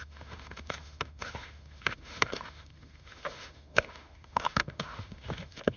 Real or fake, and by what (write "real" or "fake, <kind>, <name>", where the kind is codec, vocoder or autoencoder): fake, autoencoder, DAC-VAE